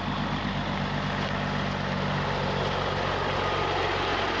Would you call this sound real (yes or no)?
yes